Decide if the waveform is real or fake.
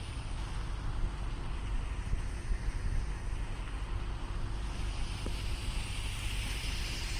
real